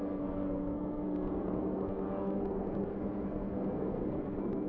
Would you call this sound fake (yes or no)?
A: yes